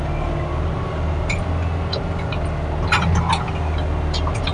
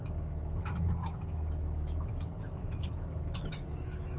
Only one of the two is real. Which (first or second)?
first